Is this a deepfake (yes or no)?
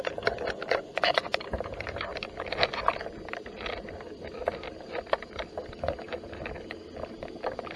no